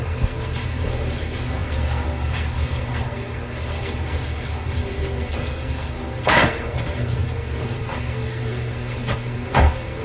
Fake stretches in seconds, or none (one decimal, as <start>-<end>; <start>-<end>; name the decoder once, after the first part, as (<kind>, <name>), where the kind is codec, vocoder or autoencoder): 0.0-10.0 (codec, SNAC)